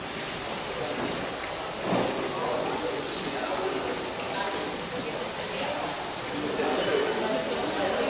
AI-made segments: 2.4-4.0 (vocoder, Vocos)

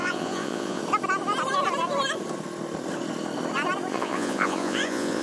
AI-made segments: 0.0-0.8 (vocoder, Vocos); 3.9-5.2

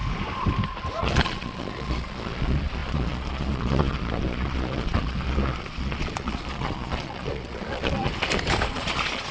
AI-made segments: 1.0-8.1 (vocoder, Vocos); 8.7-9.3